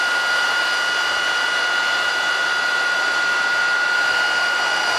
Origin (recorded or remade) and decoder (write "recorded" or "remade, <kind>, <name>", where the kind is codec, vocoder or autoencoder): remade, vocoder, BigVGAN v2